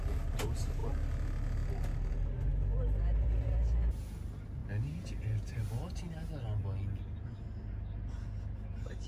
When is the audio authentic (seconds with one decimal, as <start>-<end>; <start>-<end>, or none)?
0.0-9.1